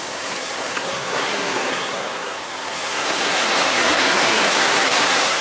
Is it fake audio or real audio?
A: fake